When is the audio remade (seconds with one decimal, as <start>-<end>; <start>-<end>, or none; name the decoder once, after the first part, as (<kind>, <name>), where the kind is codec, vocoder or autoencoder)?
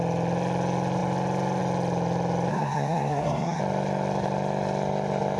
2.5-3.6 (codec, SNAC)